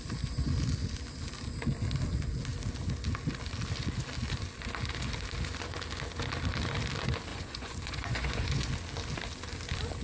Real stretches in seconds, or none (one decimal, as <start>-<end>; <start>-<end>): 0.0-7.3; 8.7-10.0